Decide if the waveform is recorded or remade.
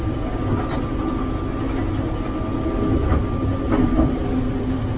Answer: recorded